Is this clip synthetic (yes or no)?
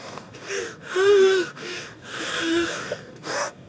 yes